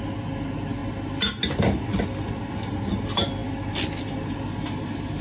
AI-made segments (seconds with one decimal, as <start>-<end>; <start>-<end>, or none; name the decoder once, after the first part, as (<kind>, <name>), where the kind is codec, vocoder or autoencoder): none